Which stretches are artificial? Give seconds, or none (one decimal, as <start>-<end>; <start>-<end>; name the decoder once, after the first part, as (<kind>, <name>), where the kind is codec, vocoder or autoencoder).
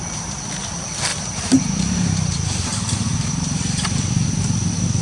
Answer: 1.1-3.6 (vocoder, BigVGAN v2)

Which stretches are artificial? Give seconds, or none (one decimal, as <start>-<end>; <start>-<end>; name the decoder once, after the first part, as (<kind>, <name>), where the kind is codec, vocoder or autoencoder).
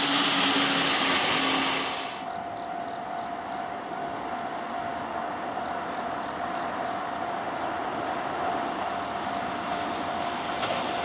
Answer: none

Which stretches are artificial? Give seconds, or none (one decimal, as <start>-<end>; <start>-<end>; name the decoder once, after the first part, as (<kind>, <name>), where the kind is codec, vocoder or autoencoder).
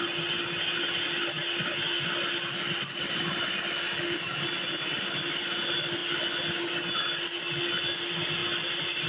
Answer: none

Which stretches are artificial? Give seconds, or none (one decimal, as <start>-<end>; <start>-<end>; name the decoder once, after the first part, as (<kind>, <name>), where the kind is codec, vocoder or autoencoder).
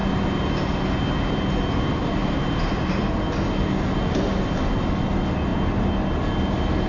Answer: 0.0-0.8 (vocoder, BigVGAN v2); 2.2-3.4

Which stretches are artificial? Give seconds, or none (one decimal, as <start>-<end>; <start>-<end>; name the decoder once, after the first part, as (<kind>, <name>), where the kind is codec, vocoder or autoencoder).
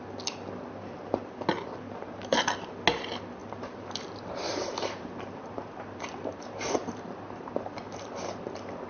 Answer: 1.7-2.7 (vocoder, BigVGAN v2); 3.4-8.1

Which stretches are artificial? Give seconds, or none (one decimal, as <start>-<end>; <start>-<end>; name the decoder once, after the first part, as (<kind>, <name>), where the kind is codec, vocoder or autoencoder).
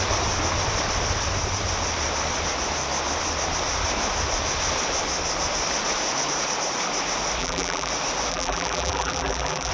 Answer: 7.4-7.9 (vocoder, BigVGAN v2); 8.3-9.7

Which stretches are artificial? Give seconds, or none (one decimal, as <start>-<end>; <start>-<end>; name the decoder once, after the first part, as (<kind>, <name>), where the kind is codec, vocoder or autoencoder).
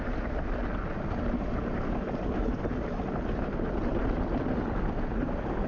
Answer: none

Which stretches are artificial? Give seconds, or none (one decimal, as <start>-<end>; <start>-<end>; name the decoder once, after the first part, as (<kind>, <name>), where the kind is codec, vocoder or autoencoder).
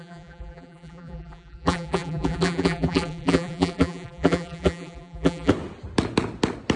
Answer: 0.0-5.5 (vocoder, BigVGAN v2)